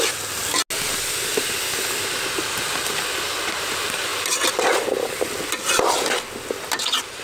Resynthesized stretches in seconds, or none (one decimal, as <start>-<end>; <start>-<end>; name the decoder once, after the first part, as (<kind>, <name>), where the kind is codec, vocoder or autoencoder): none